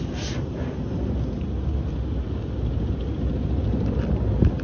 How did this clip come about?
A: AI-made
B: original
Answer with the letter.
B